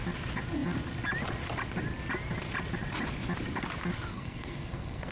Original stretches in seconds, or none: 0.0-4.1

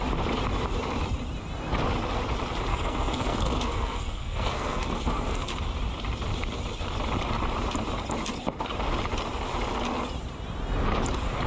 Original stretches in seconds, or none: 0.0-2.7; 5.6-11.5

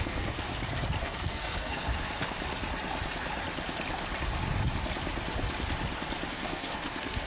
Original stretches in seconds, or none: 0.5-1.0; 1.9-6.3

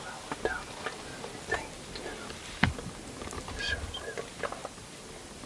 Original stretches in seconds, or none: 0.0-5.5